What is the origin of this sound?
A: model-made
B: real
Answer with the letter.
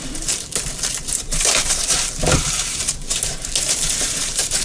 A